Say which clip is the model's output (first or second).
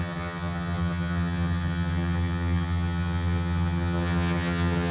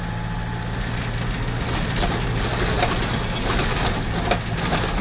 first